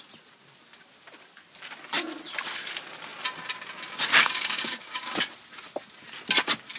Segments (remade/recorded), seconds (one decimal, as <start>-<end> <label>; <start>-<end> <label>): 0.0-4.1 recorded; 4.1-5.1 remade; 5.1-6.8 recorded